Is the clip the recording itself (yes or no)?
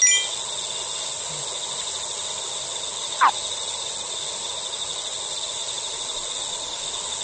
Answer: yes